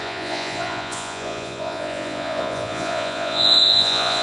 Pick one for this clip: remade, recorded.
remade